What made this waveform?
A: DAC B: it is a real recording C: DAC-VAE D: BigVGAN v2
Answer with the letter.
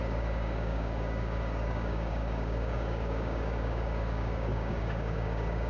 A